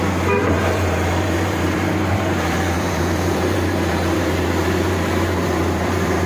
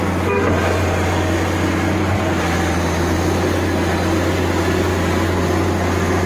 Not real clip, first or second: first